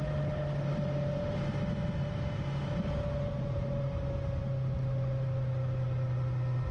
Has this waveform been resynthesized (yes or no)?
no